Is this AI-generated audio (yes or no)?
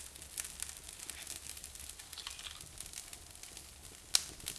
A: no